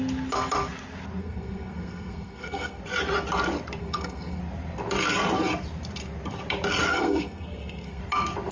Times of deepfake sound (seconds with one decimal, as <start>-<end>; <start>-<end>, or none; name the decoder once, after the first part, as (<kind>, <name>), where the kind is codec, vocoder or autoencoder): 1.2-2.8 (codec, SNAC); 3.8-4.4; 6.9-8.0